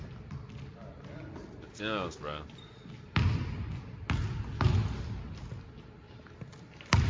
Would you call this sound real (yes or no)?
yes